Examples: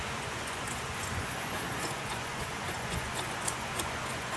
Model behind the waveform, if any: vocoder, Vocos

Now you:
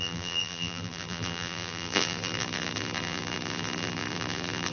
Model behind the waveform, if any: vocoder, BigVGAN v2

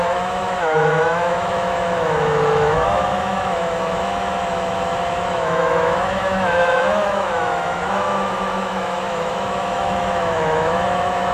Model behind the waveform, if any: autoencoder, DAC-VAE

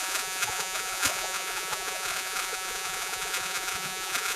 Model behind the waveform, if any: vocoder, Vocos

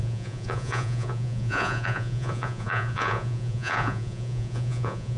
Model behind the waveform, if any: vocoder, Vocos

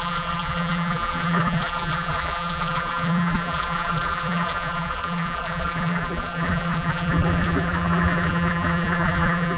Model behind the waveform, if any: vocoder, BigVGAN v2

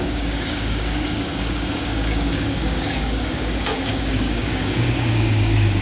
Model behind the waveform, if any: codec, DAC